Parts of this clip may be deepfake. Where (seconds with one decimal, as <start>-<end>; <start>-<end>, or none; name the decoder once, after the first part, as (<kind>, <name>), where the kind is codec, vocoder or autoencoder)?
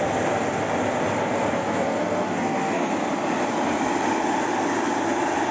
1.6-2.9 (codec, SNAC)